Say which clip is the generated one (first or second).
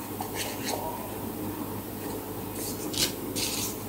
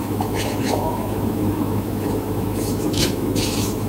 second